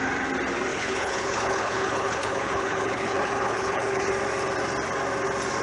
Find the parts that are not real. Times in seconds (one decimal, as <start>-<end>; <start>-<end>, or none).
0.7-4.1